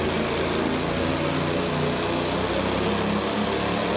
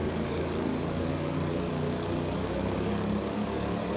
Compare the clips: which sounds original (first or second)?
first